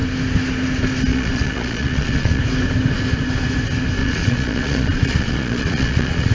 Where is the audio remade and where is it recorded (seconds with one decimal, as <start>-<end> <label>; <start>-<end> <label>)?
0.0-1.1 recorded; 1.1-2.4 remade; 2.4-4.0 recorded; 4.0-6.3 remade

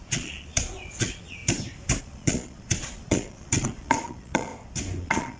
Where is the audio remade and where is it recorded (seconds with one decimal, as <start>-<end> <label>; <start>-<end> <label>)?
0.0-1.4 remade; 1.4-2.0 recorded; 2.0-4.5 remade; 4.5-5.0 recorded; 5.0-5.4 remade